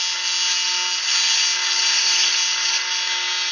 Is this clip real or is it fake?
real